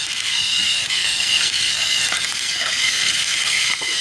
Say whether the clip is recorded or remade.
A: remade